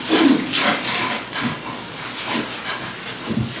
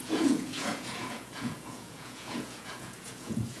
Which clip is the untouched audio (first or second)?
first